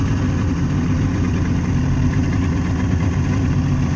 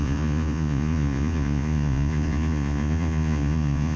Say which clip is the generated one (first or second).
second